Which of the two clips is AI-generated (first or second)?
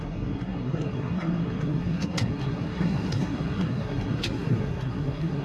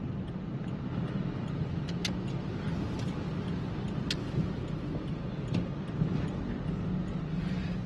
first